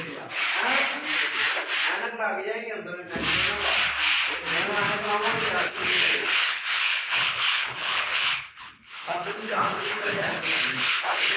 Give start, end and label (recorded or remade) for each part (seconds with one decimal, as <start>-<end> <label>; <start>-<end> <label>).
0.0-0.4 remade; 0.4-5.6 recorded; 5.6-11.4 remade

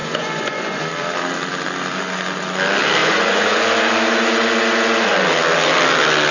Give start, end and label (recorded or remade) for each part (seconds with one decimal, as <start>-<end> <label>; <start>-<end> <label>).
0.0-0.8 remade; 0.8-3.0 recorded; 3.0-3.6 remade; 3.6-6.3 recorded